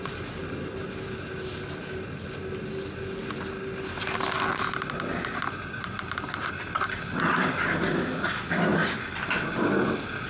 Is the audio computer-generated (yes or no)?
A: no